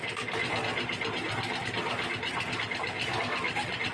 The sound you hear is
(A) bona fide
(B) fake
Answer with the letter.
A